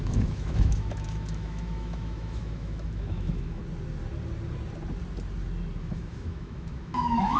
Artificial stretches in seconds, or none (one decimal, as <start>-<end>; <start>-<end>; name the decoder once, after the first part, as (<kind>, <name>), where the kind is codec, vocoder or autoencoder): 0.0-3.6 (autoencoder, DAC-VAE); 5.8-7.4

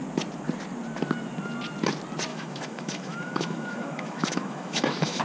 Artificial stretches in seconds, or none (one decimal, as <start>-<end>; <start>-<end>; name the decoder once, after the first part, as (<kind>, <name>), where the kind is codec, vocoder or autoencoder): 2.3-5.2 (autoencoder, DAC-VAE)

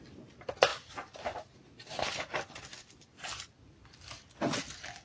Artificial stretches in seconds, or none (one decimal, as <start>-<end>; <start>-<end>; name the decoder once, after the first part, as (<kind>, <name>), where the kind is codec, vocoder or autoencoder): none

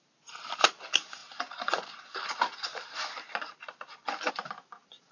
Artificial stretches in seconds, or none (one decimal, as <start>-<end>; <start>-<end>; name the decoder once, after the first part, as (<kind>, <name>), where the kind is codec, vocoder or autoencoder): none